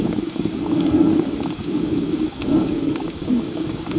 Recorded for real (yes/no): no